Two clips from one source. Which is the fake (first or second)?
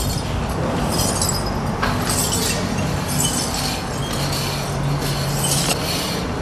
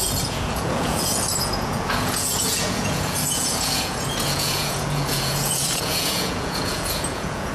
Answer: second